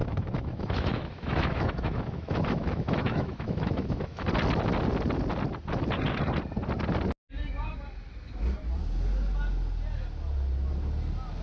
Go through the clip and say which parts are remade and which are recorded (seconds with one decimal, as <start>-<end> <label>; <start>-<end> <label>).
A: 0.0-4.3 remade; 4.3-11.4 recorded